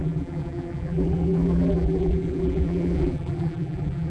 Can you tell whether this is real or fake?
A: fake